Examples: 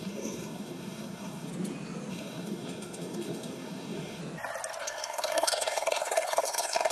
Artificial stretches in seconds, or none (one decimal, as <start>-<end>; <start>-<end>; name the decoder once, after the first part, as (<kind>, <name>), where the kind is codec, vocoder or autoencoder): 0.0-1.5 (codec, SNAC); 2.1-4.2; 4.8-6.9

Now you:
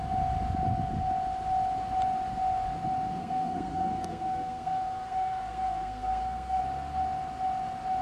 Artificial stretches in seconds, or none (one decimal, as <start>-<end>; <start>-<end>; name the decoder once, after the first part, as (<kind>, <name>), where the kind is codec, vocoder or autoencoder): 3.2-6.6 (codec, SNAC)

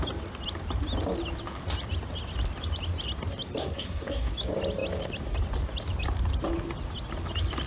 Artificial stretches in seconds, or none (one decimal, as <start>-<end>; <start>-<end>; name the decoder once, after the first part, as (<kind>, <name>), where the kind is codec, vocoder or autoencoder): 3.6-4.3 (codec, SNAC)

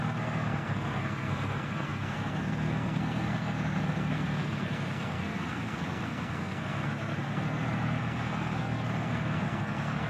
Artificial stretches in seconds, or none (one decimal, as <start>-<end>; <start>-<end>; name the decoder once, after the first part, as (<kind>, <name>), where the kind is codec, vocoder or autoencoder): 0.0-10.1 (codec, SNAC)